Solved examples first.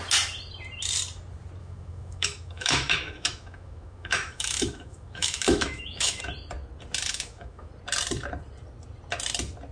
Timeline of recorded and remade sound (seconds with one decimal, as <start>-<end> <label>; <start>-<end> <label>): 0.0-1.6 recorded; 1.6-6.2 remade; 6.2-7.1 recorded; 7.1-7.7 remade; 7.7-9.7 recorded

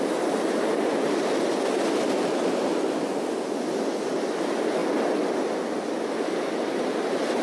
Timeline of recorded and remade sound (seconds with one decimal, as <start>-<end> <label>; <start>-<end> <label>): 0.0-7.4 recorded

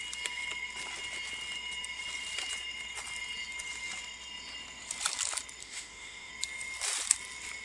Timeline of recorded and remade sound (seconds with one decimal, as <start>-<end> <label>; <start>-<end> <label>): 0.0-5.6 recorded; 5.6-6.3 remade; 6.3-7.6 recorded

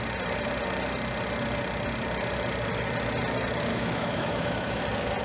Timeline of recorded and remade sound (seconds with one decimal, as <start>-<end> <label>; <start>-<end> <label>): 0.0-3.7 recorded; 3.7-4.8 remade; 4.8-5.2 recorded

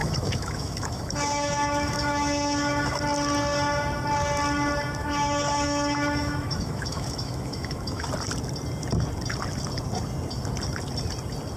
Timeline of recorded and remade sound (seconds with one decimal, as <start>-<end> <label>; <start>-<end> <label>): 0.0-3.0 remade; 3.0-5.0 recorded; 5.0-8.1 remade; 8.1-11.6 recorded

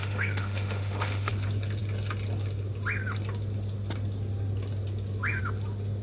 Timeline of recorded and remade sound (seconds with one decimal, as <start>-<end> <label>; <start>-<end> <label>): 0.0-1.3 remade; 1.3-6.0 recorded

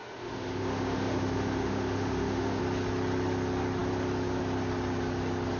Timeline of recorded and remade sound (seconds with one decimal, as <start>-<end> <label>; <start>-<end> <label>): 0.0-2.6 remade; 2.6-5.6 recorded

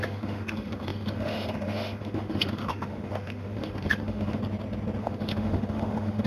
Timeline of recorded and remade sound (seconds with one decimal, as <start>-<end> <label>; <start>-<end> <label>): 0.0-4.4 remade; 4.4-5.0 recorded; 5.0-6.3 remade